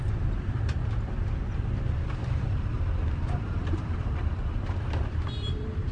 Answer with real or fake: fake